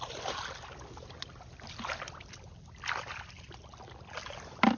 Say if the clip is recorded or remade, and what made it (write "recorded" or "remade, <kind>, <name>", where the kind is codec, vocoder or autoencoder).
recorded